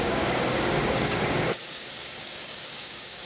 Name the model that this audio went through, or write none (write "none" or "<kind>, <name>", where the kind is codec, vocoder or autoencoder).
codec, DAC